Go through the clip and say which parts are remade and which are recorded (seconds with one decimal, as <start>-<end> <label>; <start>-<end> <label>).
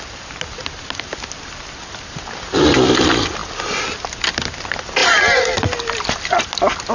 0.0-6.9 recorded